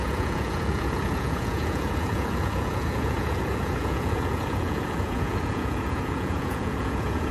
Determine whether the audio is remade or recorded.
remade